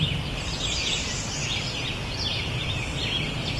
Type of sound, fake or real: real